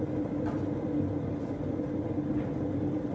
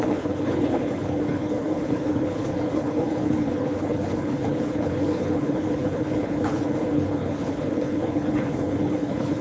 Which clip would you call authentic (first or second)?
first